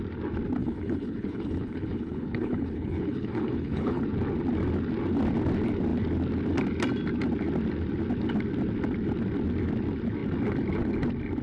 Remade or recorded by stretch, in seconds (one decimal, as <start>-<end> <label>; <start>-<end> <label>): 0.0-0.6 recorded; 0.6-4.0 remade; 4.0-11.4 recorded